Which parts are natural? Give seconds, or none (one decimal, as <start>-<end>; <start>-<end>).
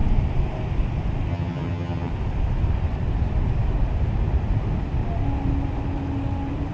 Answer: 0.0-1.3; 2.1-6.7